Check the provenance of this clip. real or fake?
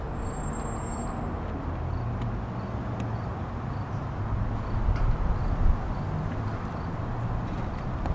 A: real